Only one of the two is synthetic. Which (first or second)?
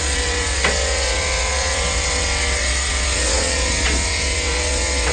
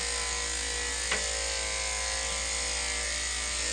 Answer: first